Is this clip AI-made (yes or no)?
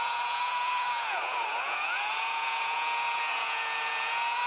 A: yes